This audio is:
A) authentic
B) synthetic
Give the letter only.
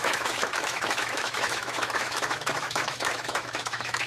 B